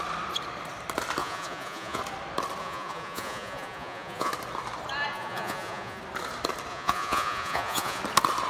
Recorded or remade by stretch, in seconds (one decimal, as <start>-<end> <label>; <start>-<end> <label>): 0.0-1.2 recorded; 1.2-2.0 remade; 2.0-2.6 recorded; 2.6-4.3 remade; 4.3-5.1 recorded; 5.1-6.0 remade; 6.0-6.7 recorded; 6.7-8.0 remade; 8.0-8.5 recorded